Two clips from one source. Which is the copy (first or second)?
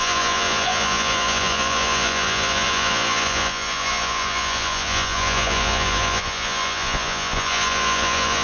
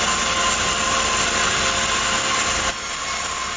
first